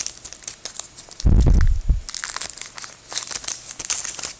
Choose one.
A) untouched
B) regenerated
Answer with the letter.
A